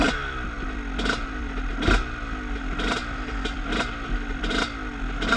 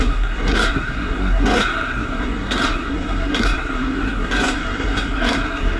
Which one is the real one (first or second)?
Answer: first